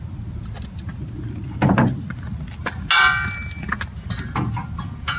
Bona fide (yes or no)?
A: yes